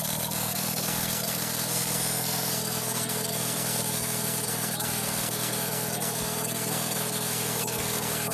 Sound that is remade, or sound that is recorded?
remade